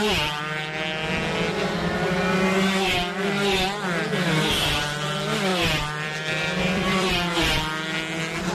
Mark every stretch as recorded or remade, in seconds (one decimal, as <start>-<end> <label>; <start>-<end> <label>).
0.0-5.5 recorded; 5.5-7.1 remade; 7.1-8.5 recorded